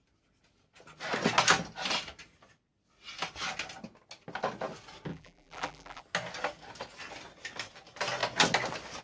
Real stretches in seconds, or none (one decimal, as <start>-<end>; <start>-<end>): 0.0-5.1; 6.0-9.0